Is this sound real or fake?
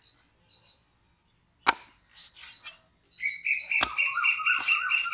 real